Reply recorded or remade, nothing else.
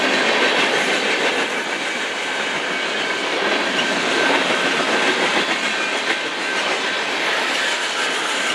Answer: recorded